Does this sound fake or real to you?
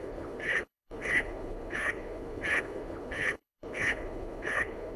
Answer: fake